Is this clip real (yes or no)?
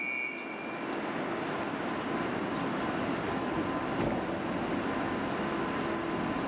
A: yes